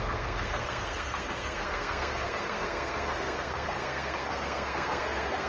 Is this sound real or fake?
fake